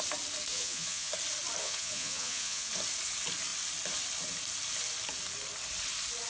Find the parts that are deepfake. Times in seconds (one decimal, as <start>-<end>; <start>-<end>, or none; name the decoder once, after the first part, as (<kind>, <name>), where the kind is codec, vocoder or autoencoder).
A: 0.5-1.1 (vocoder, Vocos); 1.6-2.7